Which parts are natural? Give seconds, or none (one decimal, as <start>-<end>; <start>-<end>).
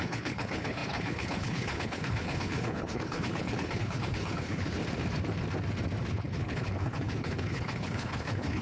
4.8-6.1